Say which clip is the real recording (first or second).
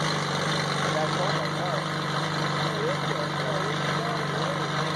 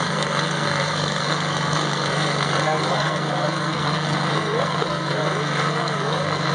first